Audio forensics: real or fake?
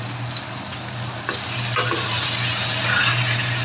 real